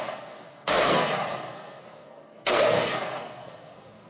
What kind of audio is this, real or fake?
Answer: fake